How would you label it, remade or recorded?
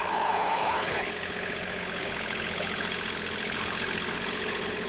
remade